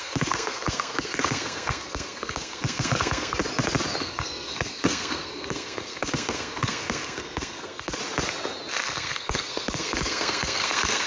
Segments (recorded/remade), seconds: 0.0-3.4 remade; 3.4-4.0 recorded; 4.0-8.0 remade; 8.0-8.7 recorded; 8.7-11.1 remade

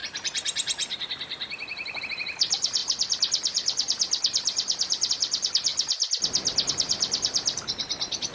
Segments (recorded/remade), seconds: 0.0-5.7 remade; 5.7-6.7 recorded; 6.7-8.3 remade

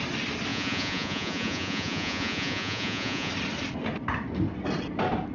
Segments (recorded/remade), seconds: 0.0-0.5 recorded; 0.5-3.3 remade; 3.3-5.3 recorded

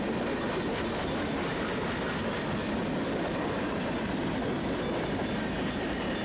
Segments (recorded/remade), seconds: 0.0-6.2 recorded